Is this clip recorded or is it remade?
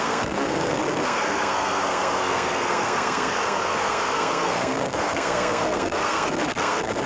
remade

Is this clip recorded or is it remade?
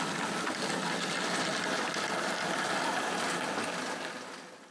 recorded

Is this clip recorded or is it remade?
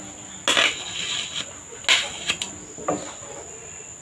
recorded